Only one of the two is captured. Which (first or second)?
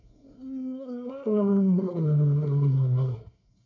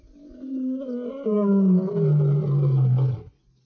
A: second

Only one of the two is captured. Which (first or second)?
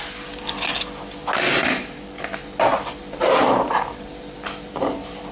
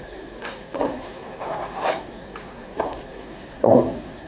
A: first